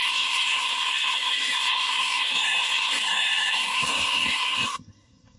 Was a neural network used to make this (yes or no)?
yes